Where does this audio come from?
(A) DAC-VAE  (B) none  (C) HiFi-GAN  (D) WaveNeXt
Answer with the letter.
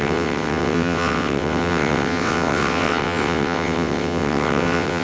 D